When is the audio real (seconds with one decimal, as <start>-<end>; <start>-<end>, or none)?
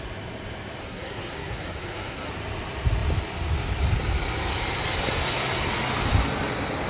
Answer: 0.0-0.8; 2.3-6.9